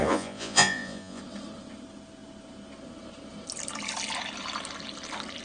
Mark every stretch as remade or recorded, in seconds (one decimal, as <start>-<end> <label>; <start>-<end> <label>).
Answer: 0.0-1.2 remade; 1.2-5.4 recorded